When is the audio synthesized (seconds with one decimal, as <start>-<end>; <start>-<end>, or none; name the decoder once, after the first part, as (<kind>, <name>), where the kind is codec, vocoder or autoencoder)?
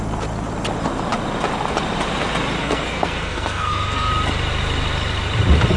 2.6-4.1 (codec, SNAC)